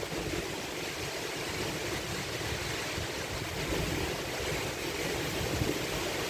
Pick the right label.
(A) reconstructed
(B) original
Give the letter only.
B